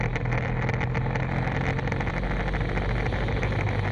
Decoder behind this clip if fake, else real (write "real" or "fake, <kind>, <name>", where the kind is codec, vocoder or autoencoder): real